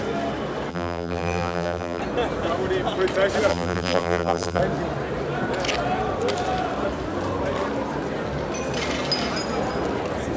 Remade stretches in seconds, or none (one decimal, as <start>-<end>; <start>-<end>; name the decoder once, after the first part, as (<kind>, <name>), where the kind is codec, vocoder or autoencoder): 0.7-2.0 (vocoder, BigVGAN v2); 3.5-4.6